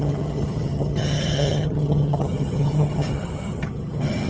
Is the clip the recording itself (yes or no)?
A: no